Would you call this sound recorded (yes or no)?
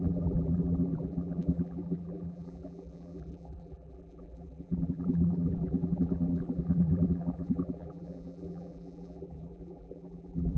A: no